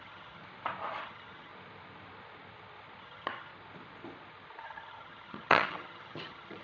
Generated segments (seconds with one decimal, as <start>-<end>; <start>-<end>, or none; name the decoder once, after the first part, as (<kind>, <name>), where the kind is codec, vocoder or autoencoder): 0.0-0.4 (vocoder, HiFi-GAN); 1.0-1.5; 3.0-3.5; 4.6-6.6